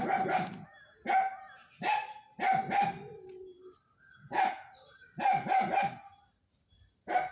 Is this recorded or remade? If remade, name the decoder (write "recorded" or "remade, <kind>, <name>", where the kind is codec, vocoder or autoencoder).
recorded